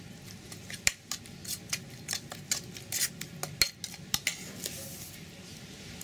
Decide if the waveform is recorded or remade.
recorded